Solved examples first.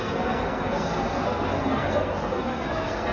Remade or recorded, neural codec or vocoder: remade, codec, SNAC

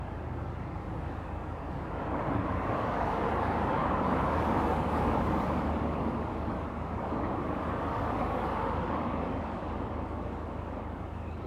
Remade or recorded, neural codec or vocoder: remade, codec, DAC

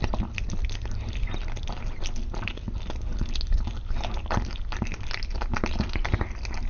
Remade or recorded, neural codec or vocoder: recorded